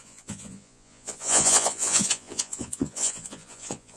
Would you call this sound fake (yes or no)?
yes